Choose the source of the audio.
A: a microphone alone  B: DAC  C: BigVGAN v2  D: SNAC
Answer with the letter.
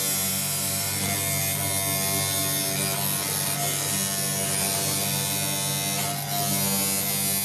A